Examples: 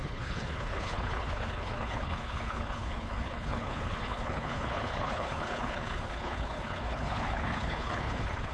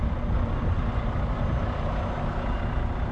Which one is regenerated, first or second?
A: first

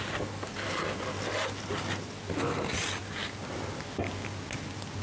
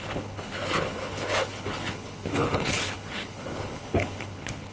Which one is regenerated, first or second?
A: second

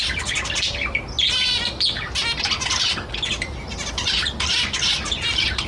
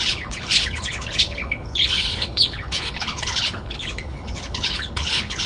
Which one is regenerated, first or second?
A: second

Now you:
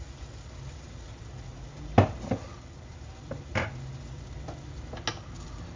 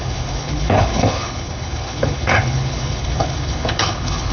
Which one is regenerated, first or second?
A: second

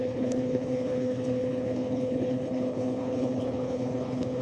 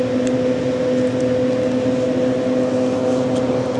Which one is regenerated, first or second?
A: first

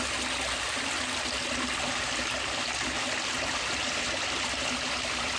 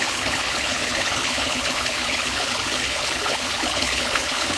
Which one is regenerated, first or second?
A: second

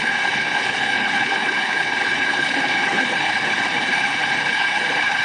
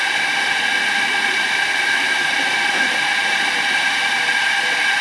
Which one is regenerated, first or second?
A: first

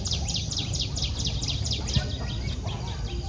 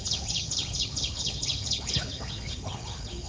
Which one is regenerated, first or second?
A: second